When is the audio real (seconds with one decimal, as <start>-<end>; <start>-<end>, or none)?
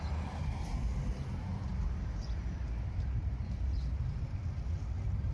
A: 0.0-1.7; 3.4-5.3